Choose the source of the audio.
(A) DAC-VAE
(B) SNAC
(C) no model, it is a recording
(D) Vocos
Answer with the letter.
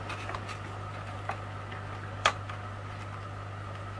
C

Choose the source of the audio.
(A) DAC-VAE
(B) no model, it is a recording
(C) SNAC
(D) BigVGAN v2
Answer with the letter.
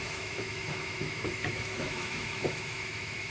A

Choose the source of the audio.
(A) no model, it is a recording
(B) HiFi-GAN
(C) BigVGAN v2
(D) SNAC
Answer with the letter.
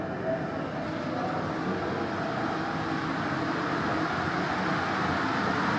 A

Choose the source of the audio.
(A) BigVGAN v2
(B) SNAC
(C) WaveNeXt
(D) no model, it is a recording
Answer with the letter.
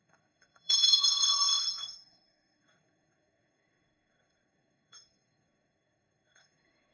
B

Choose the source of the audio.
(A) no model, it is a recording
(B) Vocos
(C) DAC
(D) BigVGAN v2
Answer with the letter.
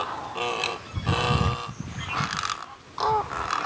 A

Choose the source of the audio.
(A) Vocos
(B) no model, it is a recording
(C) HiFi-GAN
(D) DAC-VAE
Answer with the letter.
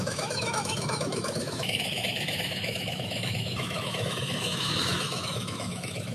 D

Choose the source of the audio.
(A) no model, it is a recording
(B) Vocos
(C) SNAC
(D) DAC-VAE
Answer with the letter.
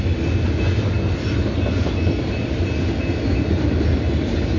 A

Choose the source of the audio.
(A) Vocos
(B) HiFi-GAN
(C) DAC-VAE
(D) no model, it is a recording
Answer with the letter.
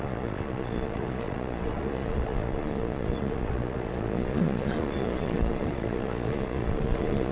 A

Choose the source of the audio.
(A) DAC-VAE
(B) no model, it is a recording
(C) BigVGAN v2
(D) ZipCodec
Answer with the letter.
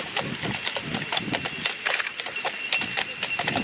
B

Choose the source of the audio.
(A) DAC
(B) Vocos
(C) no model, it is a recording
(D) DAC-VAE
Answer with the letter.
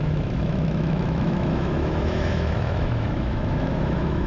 D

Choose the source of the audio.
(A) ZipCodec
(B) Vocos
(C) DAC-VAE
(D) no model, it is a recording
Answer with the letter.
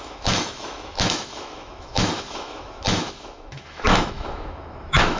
C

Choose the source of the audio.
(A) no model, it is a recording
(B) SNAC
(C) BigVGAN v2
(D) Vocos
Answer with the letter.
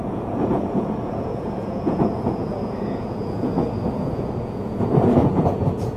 D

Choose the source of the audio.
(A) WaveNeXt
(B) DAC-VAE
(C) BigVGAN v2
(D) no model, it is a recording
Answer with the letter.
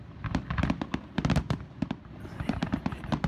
C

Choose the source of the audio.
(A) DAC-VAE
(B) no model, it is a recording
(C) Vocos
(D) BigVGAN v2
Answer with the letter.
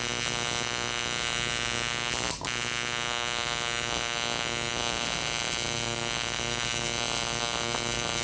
B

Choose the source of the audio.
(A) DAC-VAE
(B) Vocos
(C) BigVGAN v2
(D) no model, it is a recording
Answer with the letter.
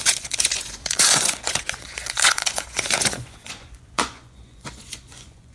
B